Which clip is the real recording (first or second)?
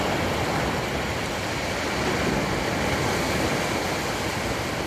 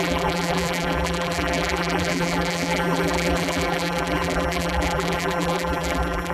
first